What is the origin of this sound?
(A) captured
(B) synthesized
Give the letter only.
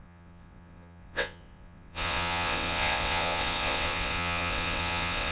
B